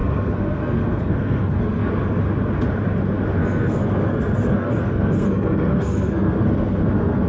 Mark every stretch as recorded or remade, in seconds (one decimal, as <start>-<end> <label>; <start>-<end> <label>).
0.0-1.9 remade; 1.9-3.4 recorded; 3.4-7.3 remade